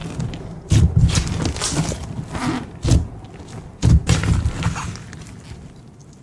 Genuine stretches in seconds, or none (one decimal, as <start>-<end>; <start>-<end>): 0.0-6.2

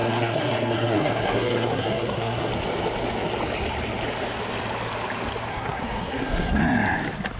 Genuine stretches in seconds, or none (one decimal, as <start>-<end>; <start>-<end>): 2.5-5.5; 6.6-7.4

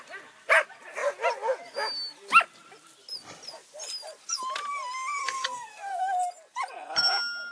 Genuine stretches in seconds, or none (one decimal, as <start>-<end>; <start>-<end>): 0.0-5.2; 6.0-7.5